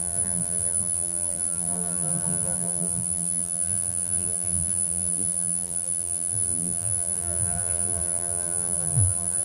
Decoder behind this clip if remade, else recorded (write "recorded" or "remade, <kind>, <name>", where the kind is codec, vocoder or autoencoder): remade, vocoder, BigVGAN v2